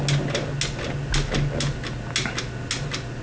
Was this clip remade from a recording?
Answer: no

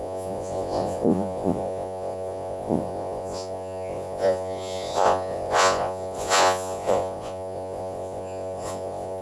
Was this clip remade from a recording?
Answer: yes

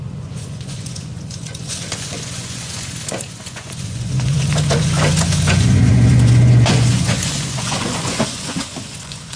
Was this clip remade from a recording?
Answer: yes